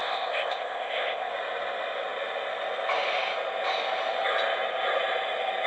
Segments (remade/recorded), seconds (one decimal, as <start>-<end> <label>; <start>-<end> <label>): 0.0-1.3 remade; 1.3-5.7 recorded